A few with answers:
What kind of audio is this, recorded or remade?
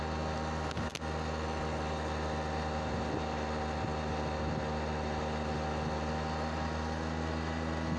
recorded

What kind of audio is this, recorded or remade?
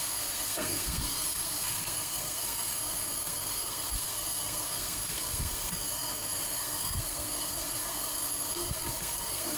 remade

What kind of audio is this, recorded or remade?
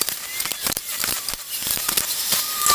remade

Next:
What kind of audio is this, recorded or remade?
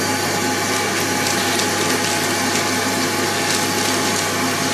recorded